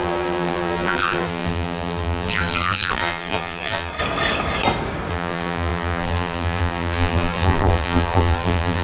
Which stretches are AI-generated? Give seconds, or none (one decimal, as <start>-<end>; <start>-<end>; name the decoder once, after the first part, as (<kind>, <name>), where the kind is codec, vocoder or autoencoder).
0.0-3.9 (vocoder, BigVGAN v2); 5.1-8.8